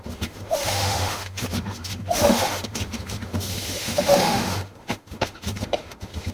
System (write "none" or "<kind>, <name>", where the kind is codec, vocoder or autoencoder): autoencoder, DAC-VAE